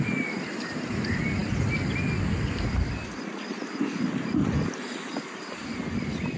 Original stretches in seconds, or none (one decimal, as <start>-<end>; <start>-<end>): 0.0-6.4